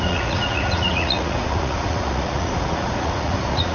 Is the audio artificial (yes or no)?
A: yes